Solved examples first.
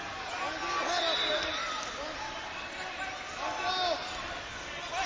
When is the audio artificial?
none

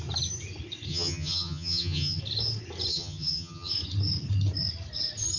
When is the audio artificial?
0.9-2.2; 2.9-3.7